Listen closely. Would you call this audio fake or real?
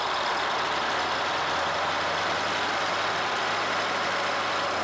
real